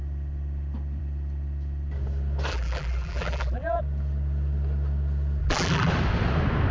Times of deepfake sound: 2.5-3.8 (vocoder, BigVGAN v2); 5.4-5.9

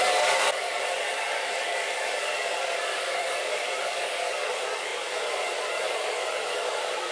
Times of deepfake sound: 0.0-7.1 (codec, DAC)

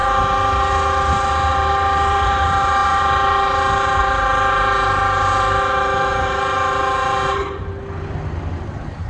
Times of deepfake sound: 1.5-7.4 (vocoder, BigVGAN v2); 8.6-9.1